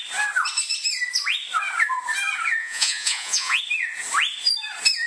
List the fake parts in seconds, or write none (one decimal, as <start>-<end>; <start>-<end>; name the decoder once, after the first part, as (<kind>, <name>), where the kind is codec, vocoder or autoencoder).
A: 2.6-3.6 (vocoder, Vocos)